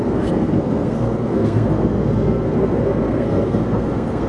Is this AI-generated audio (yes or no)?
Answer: yes